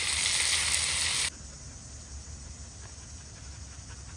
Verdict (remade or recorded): recorded